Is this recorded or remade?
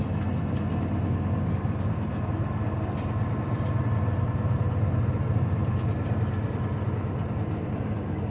recorded